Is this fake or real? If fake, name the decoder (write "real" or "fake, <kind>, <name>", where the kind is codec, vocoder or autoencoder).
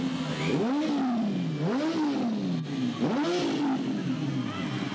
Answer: real